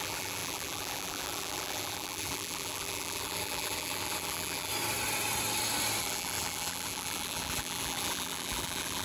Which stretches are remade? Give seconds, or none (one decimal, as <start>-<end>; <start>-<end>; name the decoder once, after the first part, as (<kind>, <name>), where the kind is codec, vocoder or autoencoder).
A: 0.0-4.7 (vocoder, BigVGAN v2); 6.0-9.0